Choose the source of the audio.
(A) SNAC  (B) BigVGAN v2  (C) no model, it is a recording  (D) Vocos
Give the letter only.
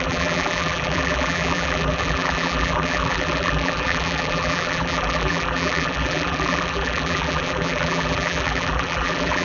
B